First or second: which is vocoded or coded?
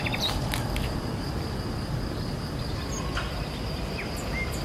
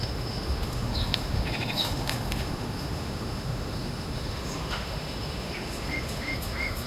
second